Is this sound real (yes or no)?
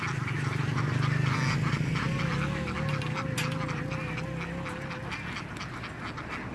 yes